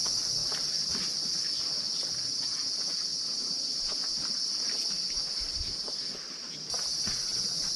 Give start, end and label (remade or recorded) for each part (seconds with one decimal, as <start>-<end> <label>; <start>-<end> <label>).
0.0-3.1 recorded; 3.1-4.2 remade; 4.2-7.8 recorded